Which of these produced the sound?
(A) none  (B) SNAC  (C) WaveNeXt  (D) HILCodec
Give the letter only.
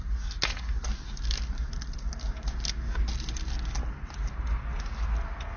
A